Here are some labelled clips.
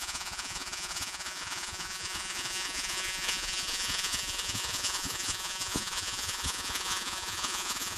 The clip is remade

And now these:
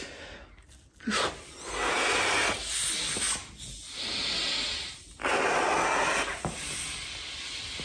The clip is recorded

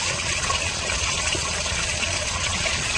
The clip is remade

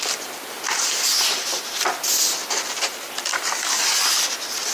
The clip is recorded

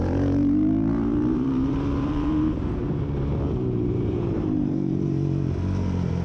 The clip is remade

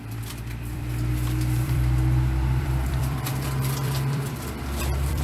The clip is remade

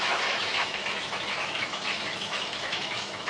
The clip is remade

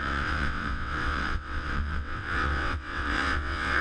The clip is remade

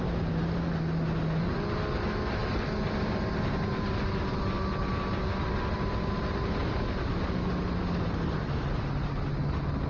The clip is recorded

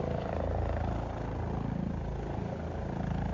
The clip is recorded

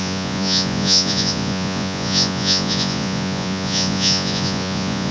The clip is remade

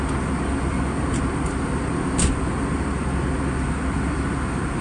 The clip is recorded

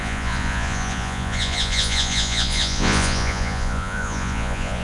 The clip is remade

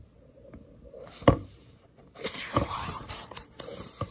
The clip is remade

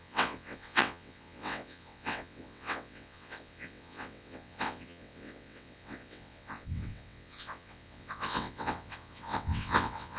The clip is remade